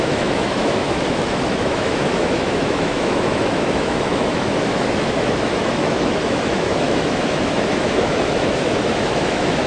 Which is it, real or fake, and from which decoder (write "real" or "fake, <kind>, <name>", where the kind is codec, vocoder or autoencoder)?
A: fake, autoencoder, DAC-VAE